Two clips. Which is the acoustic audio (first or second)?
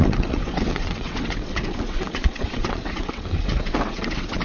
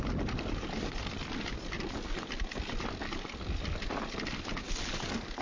second